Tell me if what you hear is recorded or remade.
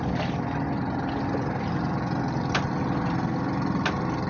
recorded